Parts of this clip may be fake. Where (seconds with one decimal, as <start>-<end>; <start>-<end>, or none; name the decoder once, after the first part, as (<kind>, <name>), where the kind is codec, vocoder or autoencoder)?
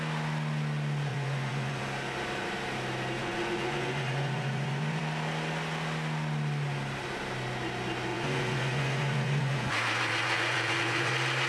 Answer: 1.1-1.8 (vocoder, Vocos); 3.2-5.0; 8.1-11.1